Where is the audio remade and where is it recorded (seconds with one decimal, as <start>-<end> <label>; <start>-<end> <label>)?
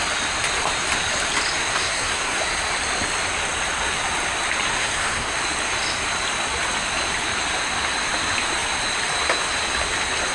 0.0-1.6 recorded; 1.6-2.4 remade; 2.4-4.7 recorded; 4.7-5.3 remade; 5.3-10.3 recorded